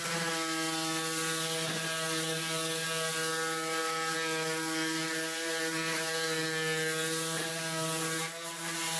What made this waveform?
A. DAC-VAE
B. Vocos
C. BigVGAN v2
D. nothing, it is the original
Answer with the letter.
D